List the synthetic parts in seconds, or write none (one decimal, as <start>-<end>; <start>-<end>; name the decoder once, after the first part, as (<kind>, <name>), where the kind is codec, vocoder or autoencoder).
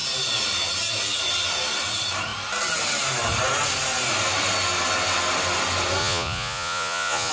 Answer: 6.0-7.3 (vocoder, Vocos)